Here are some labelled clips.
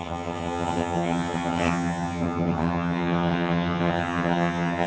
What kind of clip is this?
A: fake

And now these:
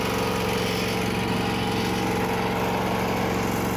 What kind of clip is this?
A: real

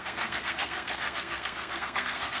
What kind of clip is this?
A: fake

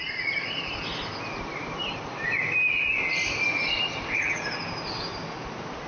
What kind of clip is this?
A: real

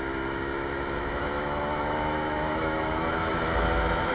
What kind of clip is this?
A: fake